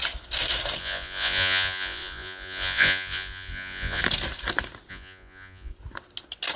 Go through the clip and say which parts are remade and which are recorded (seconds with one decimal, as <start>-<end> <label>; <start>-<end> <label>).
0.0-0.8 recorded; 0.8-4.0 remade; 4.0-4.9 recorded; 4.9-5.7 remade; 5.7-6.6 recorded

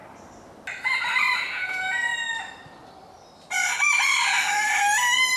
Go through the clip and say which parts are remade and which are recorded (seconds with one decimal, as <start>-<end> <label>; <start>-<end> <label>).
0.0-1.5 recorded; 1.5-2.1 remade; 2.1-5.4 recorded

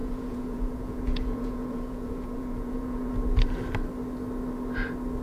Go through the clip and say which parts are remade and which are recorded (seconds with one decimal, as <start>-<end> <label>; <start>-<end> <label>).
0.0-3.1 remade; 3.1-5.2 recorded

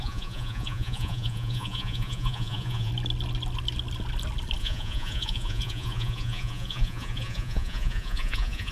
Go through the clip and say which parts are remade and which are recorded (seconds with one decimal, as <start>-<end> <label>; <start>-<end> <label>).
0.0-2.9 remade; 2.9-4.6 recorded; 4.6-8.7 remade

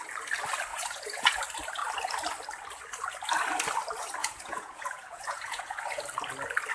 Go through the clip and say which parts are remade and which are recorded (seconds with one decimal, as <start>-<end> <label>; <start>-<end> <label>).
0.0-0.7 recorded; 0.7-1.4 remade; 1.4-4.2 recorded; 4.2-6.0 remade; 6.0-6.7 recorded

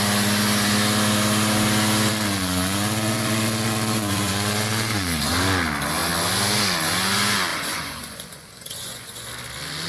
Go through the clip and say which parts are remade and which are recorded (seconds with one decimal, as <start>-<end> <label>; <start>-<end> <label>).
0.0-2.1 recorded; 2.1-5.3 remade; 5.3-7.5 recorded; 7.5-9.3 remade; 9.3-9.9 recorded